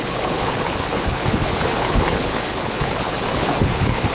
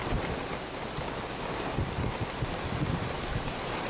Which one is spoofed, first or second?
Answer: first